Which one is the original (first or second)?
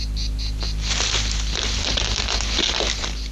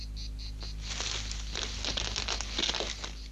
second